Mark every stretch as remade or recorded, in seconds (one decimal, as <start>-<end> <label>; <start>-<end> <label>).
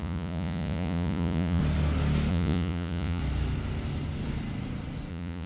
0.0-1.6 remade; 1.6-2.3 recorded; 2.3-3.2 remade; 3.2-5.1 recorded; 5.1-5.5 remade